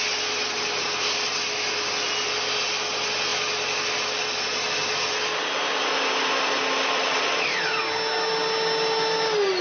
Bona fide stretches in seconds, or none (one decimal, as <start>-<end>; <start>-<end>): 0.0-9.6